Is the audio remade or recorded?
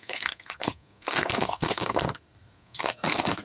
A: remade